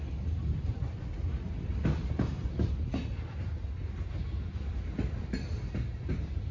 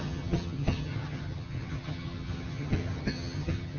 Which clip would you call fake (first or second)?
second